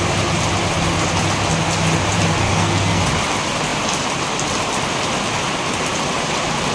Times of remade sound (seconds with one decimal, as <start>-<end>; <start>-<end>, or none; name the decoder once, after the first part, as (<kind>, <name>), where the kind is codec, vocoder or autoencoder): 2.4-3.0 (codec, SNAC)